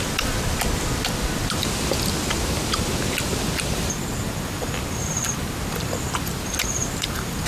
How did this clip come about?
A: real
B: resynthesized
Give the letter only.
A